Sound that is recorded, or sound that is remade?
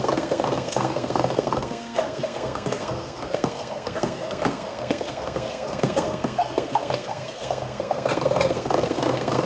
remade